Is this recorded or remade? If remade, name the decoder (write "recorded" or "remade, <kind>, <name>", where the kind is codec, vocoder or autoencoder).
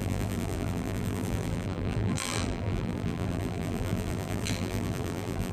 remade, vocoder, BigVGAN v2